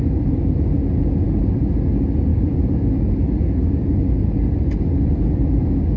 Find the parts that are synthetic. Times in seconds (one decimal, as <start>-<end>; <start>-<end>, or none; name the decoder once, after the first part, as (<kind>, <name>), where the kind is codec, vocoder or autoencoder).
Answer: none